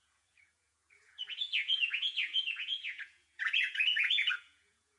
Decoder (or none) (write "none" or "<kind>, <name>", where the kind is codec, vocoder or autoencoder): vocoder, Vocos